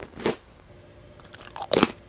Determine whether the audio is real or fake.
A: fake